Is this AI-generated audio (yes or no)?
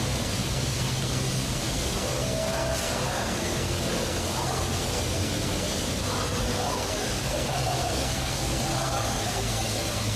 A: yes